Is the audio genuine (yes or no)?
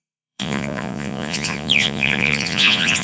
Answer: no